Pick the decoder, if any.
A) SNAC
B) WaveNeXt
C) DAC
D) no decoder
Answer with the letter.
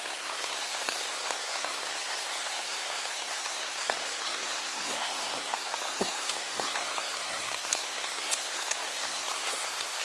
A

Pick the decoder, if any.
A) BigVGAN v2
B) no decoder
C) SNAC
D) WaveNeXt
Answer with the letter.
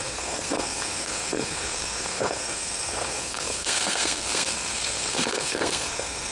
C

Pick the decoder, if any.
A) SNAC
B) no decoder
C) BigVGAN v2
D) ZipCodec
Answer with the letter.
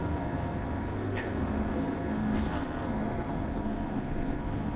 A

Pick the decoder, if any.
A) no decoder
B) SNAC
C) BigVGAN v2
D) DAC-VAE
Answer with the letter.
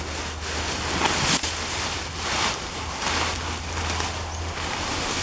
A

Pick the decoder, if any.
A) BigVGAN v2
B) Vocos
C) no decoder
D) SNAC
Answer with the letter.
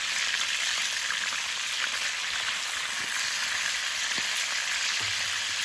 C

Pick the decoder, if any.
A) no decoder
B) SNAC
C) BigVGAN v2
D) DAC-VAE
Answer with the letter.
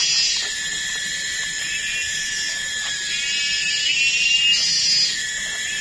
A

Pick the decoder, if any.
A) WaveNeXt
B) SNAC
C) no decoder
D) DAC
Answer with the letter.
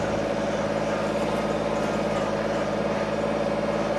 C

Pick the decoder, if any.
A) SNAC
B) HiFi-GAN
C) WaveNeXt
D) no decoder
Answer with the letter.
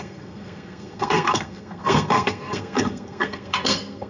A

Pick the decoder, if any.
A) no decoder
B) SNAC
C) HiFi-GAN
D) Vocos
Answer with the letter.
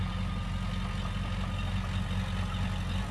A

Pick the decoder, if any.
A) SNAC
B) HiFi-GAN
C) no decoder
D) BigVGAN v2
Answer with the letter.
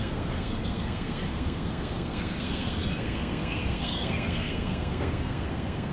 A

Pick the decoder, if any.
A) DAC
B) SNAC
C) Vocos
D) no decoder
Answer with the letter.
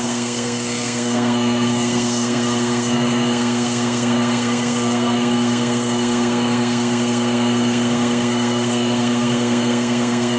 B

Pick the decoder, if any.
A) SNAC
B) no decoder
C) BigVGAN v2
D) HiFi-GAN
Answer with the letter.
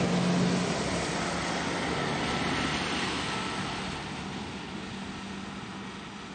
B